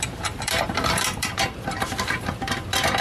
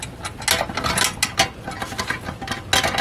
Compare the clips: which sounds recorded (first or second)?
second